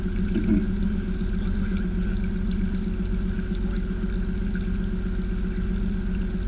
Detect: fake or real real